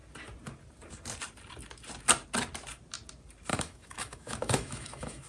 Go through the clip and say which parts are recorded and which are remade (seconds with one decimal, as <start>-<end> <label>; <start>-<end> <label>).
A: 0.0-3.5 recorded; 3.5-5.3 remade

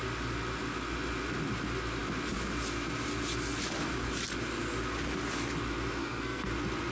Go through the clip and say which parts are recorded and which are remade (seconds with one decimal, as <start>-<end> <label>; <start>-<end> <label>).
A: 0.0-6.0 recorded; 6.0-6.5 remade; 6.5-6.9 recorded

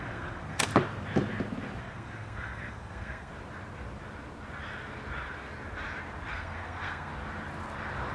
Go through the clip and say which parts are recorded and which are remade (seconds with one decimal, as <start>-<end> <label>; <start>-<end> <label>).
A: 0.0-0.7 remade; 0.7-1.8 recorded; 1.8-3.3 remade; 3.3-6.3 recorded; 6.3-7.1 remade; 7.1-8.1 recorded

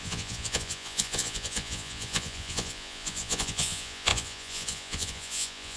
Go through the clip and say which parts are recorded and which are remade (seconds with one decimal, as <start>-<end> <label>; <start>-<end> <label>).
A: 0.0-5.8 remade

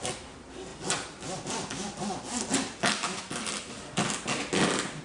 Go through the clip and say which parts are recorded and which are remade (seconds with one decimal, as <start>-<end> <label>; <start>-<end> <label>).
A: 0.0-5.0 recorded

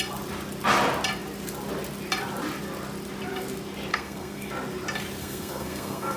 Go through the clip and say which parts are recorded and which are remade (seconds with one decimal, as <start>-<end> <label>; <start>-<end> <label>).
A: 0.0-3.9 recorded; 3.9-4.5 remade; 4.5-5.2 recorded; 5.2-6.2 remade

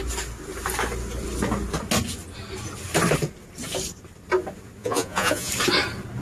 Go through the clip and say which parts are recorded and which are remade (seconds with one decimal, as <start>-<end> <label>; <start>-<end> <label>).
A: 0.0-4.8 recorded; 4.8-5.5 remade; 5.5-6.2 recorded

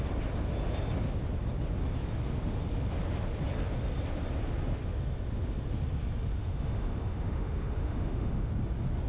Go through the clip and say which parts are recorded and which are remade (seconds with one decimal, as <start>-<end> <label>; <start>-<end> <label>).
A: 0.0-6.4 recorded; 6.4-8.5 remade; 8.5-9.1 recorded